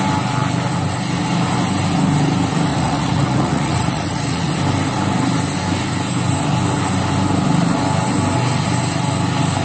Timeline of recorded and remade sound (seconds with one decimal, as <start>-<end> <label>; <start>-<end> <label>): 0.0-2.7 recorded; 2.7-4.5 remade; 4.5-9.6 recorded